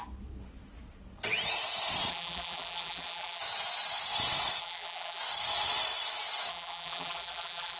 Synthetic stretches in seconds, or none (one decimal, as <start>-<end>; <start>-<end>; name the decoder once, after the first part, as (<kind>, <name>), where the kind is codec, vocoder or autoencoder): 2.1-3.4 (vocoder, BigVGAN v2); 4.6-5.2; 6.5-7.8